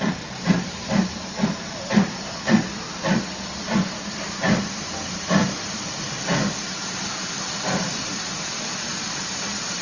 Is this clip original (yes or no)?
no